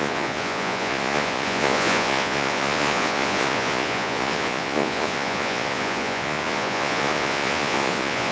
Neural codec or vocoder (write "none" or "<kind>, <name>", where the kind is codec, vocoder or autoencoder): vocoder, Vocos